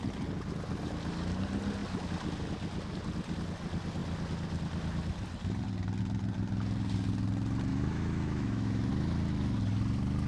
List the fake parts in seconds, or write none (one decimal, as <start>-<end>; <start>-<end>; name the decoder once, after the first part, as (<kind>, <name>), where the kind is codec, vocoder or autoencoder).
7.7-8.9 (autoencoder, DAC-VAE)